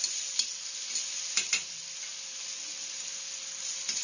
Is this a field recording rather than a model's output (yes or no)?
yes